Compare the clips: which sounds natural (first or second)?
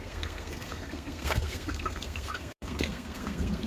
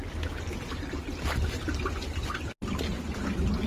second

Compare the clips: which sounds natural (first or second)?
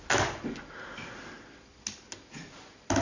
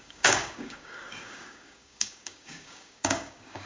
first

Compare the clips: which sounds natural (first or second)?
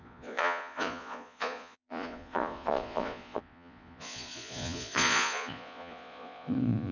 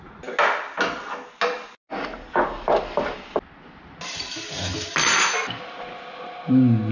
second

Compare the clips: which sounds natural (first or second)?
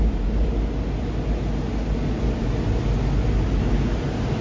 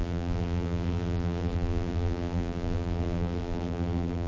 first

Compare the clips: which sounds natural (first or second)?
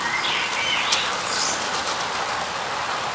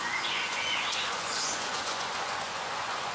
first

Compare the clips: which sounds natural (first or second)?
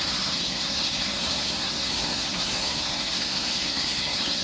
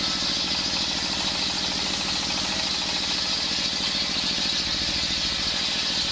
second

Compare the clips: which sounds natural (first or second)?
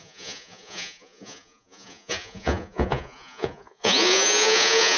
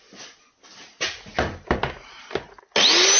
second